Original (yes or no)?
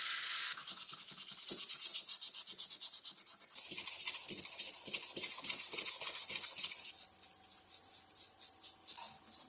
yes